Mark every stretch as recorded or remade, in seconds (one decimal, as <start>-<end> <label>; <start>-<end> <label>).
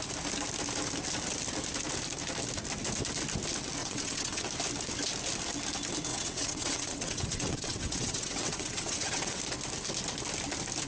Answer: 0.0-3.8 recorded; 3.8-4.5 remade; 4.5-6.1 recorded; 6.1-9.4 remade; 9.4-10.9 recorded